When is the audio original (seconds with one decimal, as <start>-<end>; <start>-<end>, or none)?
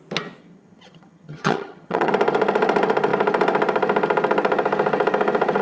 0.0-0.4; 2.1-5.6